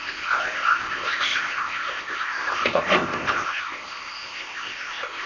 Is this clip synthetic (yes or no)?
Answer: yes